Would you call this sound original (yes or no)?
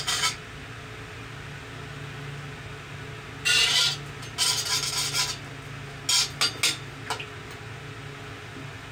yes